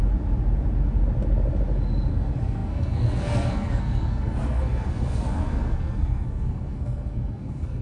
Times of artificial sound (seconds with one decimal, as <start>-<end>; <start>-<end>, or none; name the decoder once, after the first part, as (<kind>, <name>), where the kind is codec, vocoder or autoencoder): 2.1-7.8 (codec, SNAC)